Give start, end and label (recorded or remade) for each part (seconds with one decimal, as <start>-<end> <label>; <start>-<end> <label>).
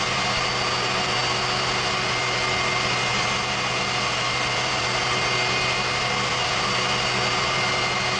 0.0-8.2 recorded